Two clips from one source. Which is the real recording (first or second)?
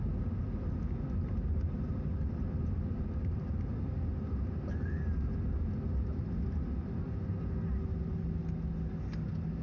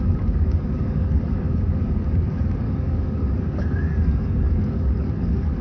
first